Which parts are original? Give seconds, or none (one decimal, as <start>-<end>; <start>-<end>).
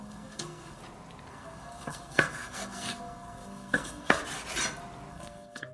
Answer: 0.8-1.3; 4.2-5.1